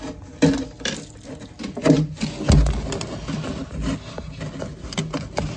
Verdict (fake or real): real